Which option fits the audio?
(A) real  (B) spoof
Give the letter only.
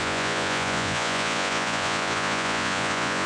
B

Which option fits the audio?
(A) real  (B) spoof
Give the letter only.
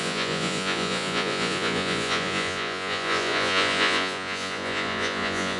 B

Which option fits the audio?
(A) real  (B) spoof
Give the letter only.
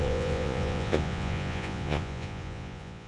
B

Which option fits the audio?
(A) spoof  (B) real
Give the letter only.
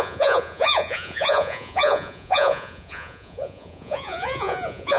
A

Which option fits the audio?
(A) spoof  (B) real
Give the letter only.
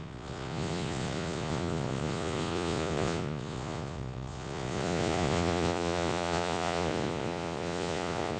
A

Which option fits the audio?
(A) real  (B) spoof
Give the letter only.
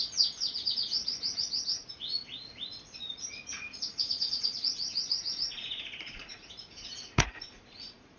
B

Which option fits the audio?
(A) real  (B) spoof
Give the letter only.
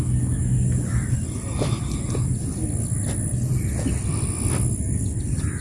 A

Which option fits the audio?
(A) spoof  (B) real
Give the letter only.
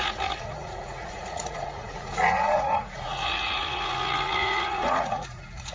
A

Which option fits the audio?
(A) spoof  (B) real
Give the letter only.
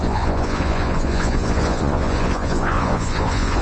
A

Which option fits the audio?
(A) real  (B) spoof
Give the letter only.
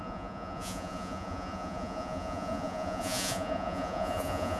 B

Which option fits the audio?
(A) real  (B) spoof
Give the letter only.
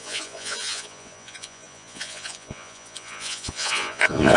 B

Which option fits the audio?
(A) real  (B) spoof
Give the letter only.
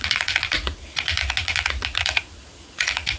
B